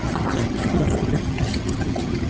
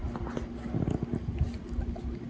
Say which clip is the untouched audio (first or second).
second